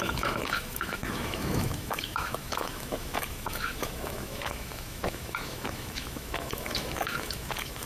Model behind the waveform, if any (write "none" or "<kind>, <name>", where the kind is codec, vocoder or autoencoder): autoencoder, DAC-VAE